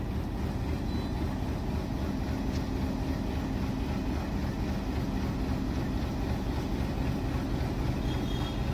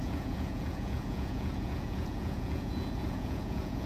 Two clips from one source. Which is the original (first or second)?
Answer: first